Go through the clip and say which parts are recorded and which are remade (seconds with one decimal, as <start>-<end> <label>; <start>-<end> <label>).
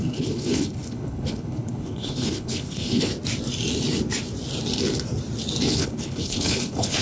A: 0.0-3.1 remade; 3.1-5.7 recorded; 5.7-7.0 remade